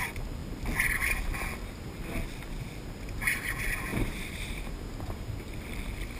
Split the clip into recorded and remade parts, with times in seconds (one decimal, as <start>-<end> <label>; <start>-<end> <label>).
0.0-3.9 recorded; 3.9-5.0 remade; 5.0-6.2 recorded